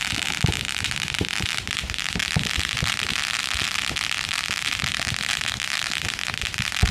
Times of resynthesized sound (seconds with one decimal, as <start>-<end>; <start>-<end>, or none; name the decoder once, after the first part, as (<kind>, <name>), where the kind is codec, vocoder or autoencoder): none